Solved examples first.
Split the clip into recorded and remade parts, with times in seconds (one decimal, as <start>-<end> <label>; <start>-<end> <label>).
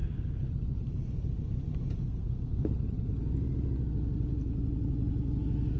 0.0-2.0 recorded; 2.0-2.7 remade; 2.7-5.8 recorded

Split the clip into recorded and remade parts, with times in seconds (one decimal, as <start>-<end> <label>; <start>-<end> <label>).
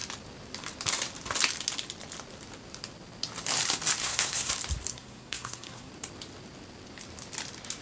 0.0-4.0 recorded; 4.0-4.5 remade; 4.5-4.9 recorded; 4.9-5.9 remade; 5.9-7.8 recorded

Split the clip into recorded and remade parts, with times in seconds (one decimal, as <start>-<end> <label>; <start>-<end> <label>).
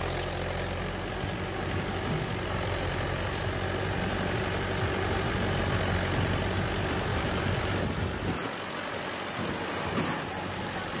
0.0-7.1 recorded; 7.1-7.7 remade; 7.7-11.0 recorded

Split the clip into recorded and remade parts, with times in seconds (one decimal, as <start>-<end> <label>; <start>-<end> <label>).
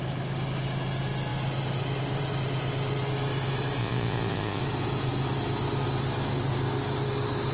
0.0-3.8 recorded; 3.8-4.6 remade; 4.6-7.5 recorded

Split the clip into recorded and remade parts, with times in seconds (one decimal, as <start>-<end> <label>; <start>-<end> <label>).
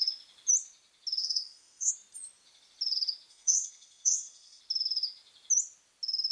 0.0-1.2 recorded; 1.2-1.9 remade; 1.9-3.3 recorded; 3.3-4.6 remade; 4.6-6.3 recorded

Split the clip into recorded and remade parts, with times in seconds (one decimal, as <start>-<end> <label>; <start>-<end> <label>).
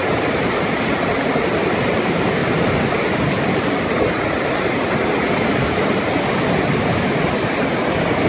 0.0-1.1 remade; 1.1-2.4 recorded; 2.4-4.5 remade; 4.5-8.3 recorded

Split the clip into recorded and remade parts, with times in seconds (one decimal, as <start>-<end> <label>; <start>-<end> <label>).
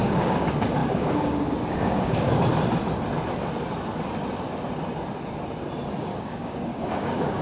0.0-2.5 remade; 2.5-6.0 recorded; 6.0-7.4 remade